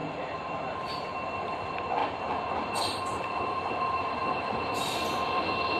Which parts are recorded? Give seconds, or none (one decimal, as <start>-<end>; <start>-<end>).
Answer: 1.1-2.0; 3.7-5.8